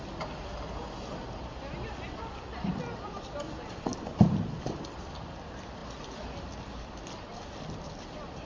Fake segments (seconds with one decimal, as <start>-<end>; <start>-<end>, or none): 3.9-4.8